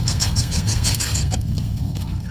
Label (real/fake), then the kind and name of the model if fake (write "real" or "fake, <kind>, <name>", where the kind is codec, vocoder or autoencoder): fake, codec, SNAC